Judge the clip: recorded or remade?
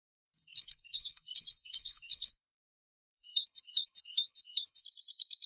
remade